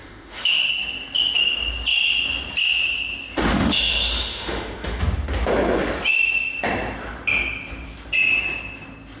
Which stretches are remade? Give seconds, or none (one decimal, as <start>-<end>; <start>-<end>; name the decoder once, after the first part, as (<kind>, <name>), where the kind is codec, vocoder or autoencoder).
0.0-0.7 (autoencoder, DAC-VAE); 3.5-5.0